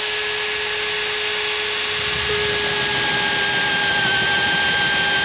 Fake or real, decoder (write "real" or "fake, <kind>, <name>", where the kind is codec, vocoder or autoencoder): real